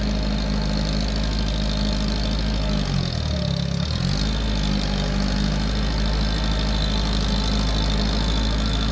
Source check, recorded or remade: recorded